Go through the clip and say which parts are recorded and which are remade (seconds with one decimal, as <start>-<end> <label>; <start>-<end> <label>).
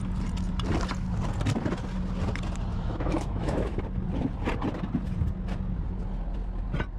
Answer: 0.0-2.7 recorded; 2.7-3.8 remade; 3.8-7.0 recorded